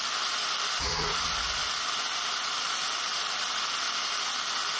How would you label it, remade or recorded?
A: remade